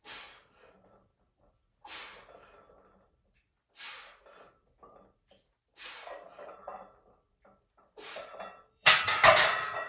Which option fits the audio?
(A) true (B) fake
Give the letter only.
B